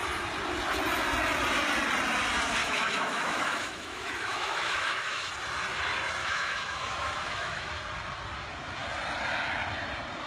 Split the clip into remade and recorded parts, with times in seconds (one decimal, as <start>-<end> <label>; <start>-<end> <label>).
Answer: 0.0-2.6 recorded; 2.6-5.3 remade; 5.3-6.2 recorded; 6.2-7.7 remade; 7.7-10.3 recorded